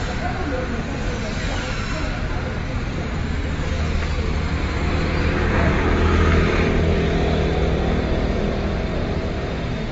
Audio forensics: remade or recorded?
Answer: recorded